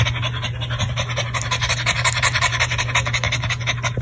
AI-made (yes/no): no